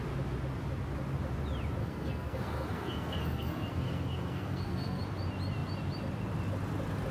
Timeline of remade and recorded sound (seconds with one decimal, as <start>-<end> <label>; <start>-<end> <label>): 0.0-1.8 recorded; 1.8-5.0 remade; 5.0-7.1 recorded